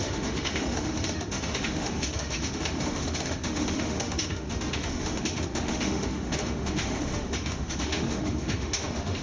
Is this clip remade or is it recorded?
remade